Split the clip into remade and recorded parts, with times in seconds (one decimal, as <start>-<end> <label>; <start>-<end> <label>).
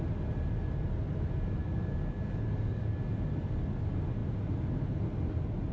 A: 0.0-1.6 recorded; 1.6-3.0 remade; 3.0-5.7 recorded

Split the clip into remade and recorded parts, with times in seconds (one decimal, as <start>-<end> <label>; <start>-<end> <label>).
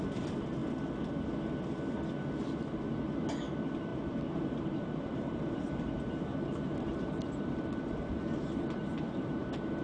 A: 0.0-0.6 remade; 0.6-2.7 recorded; 2.7-9.8 remade